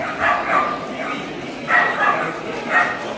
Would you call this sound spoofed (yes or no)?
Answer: no